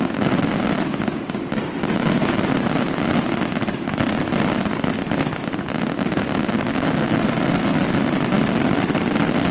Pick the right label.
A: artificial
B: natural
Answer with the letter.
B